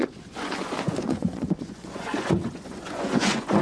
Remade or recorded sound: remade